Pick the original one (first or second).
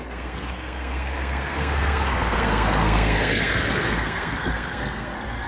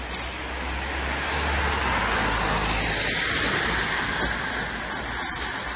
second